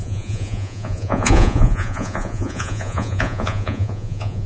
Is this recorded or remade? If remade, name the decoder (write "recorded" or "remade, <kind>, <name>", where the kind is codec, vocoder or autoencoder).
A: remade, vocoder, Vocos